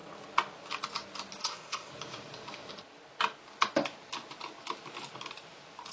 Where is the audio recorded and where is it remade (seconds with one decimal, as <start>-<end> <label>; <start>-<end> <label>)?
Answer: 0.0-1.4 recorded; 1.4-1.9 remade; 1.9-5.9 recorded